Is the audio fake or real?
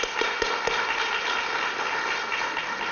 real